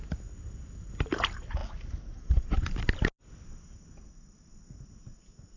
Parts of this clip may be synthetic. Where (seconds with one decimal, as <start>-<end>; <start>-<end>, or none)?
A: none